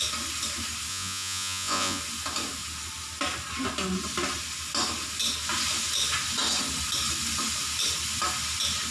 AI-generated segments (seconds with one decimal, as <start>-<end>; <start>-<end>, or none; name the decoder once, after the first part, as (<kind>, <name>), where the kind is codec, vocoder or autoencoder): 0.9-2.0 (vocoder, Vocos)

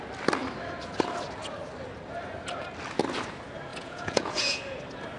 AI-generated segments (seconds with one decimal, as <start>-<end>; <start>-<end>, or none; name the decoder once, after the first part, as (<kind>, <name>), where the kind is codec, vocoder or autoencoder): 3.7-4.6 (vocoder, Vocos)

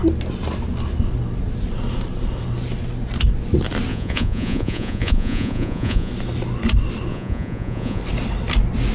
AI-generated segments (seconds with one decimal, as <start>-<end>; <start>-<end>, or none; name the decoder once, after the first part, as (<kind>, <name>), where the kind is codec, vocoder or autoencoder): 3.9-6.1 (vocoder, Vocos); 7.1-8.0

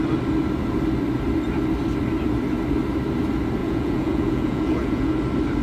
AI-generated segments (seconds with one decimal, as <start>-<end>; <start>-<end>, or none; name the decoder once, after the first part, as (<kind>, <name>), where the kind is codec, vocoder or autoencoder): 3.6-5.1 (vocoder, Vocos)

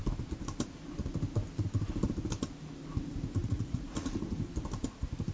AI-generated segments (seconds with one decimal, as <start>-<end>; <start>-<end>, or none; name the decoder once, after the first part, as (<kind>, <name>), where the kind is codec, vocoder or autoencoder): 3.4-4.1 (vocoder, Vocos)

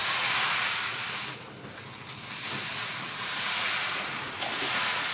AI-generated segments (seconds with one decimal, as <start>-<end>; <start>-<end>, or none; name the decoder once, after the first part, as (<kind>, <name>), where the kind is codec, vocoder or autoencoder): 0.0-1.2 (vocoder, Vocos); 2.8-5.1

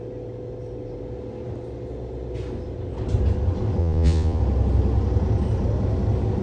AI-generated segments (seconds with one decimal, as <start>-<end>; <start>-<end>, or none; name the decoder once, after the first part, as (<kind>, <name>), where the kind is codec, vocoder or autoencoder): 3.8-4.4 (vocoder, Vocos)